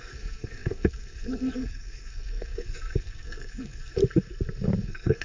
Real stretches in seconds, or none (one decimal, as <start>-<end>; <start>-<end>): 4.0-4.8